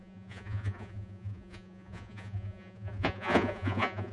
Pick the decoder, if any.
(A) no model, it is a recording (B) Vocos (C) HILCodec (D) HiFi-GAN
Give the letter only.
B